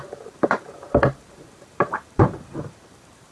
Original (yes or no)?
no